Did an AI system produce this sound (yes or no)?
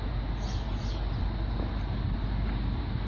no